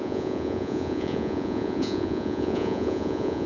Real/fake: fake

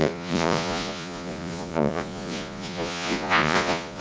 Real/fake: fake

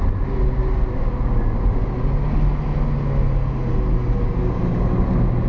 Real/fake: real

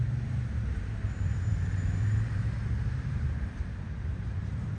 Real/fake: fake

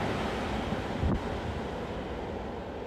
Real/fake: real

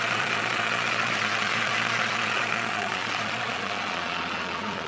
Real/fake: fake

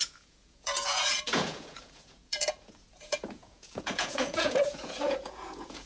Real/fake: fake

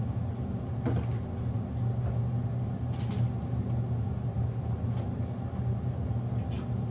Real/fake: real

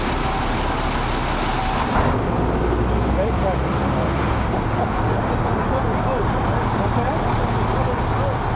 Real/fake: real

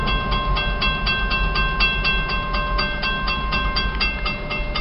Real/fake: real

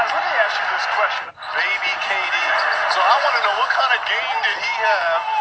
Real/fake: real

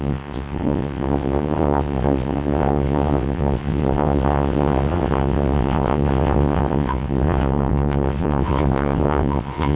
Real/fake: fake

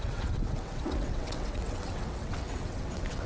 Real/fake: fake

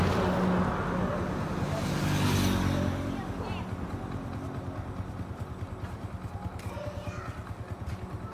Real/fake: real